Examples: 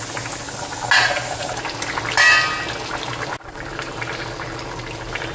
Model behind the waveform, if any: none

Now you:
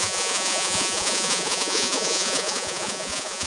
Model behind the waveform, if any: vocoder, Vocos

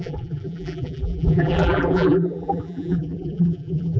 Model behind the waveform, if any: vocoder, BigVGAN v2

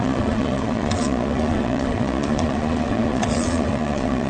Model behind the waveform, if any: vocoder, Vocos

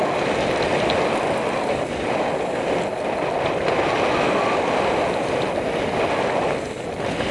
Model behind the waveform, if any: none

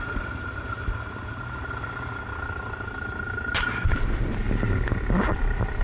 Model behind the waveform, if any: none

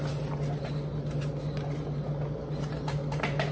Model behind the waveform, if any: none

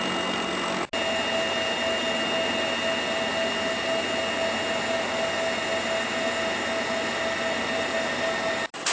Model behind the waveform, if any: none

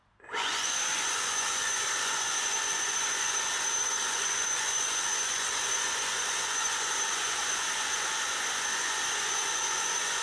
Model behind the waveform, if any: vocoder, Vocos